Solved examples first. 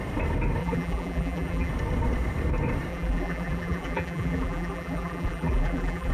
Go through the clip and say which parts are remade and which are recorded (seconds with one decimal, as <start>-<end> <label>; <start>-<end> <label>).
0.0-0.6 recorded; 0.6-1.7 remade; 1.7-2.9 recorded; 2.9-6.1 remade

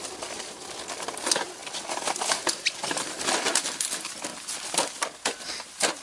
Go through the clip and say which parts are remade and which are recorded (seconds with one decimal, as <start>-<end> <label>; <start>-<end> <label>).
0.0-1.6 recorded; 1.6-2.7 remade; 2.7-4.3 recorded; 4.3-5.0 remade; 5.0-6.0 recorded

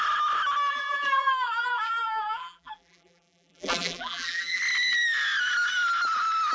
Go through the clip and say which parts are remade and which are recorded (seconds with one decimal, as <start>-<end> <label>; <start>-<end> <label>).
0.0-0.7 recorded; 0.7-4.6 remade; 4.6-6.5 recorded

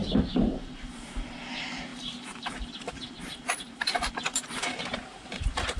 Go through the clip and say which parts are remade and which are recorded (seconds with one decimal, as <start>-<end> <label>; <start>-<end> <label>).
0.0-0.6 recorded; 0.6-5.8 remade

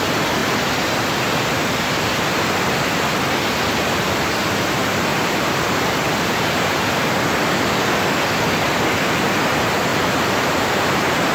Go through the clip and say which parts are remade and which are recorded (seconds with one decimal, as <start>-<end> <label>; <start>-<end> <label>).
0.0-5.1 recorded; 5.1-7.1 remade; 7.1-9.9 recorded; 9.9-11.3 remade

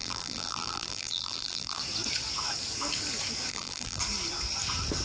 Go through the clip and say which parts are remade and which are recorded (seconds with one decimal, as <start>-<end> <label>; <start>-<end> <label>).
0.0-1.8 remade; 1.8-3.5 recorded; 3.5-4.0 remade; 4.0-5.0 recorded